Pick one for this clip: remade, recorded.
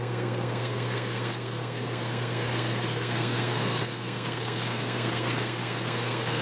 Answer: remade